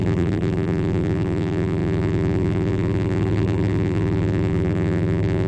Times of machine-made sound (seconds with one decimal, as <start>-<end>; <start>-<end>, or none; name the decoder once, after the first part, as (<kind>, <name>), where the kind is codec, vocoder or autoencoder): 0.0-5.5 (vocoder, BigVGAN v2)